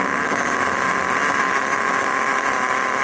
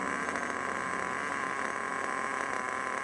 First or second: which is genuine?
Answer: second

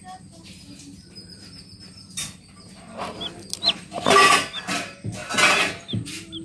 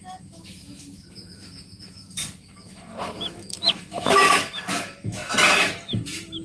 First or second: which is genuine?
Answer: first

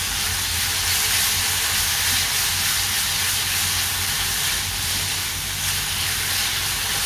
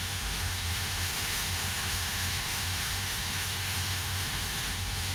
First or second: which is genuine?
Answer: first